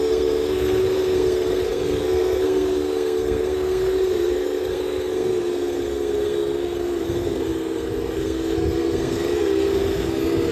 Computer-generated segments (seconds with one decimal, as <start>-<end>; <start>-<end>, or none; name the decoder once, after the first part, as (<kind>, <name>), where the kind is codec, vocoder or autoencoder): 0.0-10.5 (codec, SNAC)